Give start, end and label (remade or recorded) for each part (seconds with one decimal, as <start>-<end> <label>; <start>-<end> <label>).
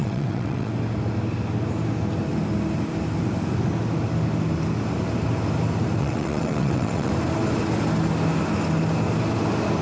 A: 0.0-0.7 remade; 0.7-6.0 recorded; 6.0-7.1 remade; 7.1-9.8 recorded